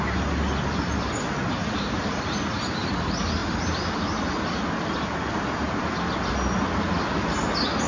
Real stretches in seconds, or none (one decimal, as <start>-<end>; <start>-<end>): 0.0-1.4; 2.3-7.9

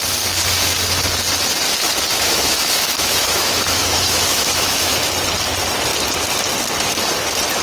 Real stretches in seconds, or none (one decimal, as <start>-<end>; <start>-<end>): 0.0-2.1; 5.1-7.6

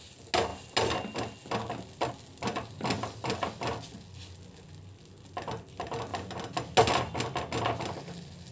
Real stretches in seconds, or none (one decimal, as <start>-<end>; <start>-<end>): 0.0-8.5

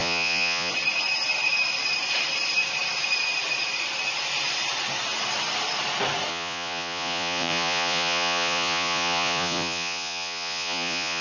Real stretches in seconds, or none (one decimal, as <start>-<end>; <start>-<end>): 0.7-6.3